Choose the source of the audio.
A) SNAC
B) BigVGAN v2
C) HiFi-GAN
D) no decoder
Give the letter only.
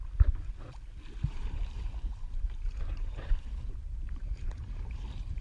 B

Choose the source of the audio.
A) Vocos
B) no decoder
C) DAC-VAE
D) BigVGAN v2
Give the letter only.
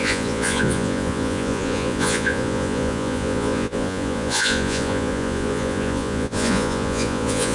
A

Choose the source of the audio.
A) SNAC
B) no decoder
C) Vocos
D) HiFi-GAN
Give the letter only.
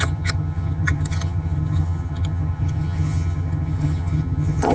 D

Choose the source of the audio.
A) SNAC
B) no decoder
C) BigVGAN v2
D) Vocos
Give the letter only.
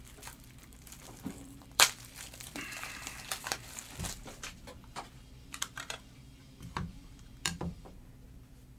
C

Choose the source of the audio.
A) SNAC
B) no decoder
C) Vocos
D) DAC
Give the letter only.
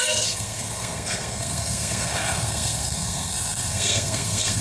A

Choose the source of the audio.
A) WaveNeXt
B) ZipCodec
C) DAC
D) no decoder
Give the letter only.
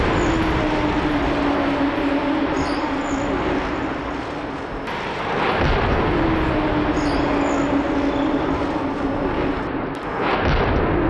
D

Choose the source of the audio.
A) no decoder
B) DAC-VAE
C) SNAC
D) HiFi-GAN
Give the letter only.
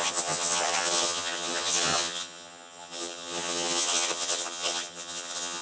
D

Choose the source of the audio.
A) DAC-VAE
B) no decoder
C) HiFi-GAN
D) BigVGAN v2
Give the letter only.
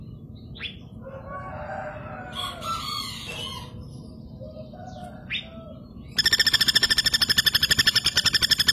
B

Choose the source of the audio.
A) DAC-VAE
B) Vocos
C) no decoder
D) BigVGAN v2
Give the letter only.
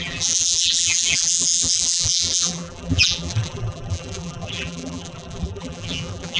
D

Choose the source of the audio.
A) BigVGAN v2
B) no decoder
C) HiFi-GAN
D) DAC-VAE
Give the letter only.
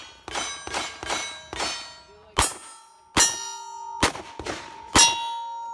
B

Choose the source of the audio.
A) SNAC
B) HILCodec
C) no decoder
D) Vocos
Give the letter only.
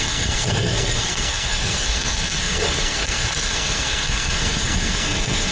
A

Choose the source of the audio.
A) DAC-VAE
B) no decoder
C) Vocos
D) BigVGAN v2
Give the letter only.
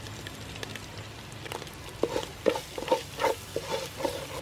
B